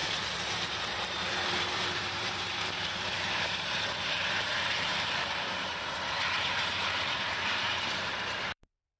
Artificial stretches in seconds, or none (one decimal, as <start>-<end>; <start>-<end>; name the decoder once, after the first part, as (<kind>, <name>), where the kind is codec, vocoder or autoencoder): 0.0-9.0 (vocoder, BigVGAN v2)